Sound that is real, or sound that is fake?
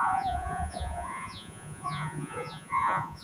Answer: fake